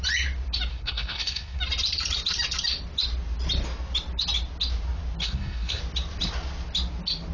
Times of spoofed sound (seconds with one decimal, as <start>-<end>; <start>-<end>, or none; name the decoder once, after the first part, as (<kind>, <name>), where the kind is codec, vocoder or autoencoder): 0.7-1.6 (codec, SNAC); 5.2-5.8

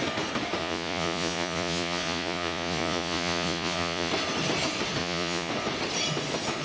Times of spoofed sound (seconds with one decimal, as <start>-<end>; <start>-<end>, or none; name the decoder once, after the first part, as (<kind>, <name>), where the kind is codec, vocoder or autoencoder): 0.6-4.1 (vocoder, Vocos); 5.0-5.5